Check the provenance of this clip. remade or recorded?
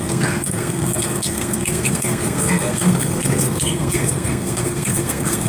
remade